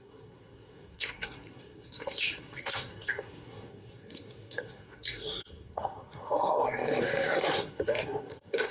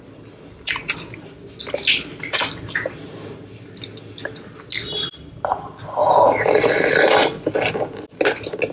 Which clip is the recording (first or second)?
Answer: second